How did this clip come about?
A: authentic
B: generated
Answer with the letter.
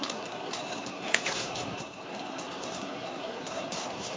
B